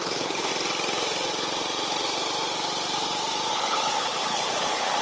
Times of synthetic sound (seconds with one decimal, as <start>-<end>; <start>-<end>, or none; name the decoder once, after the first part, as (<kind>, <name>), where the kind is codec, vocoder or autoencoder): 0.0-0.5 (codec, HILCodec); 3.5-5.0